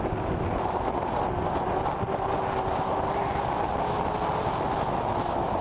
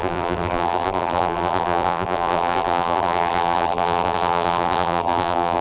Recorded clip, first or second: first